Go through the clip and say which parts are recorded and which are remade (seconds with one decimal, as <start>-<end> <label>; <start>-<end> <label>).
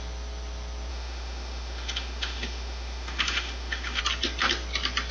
0.0-0.9 recorded; 0.9-4.0 remade; 4.0-5.1 recorded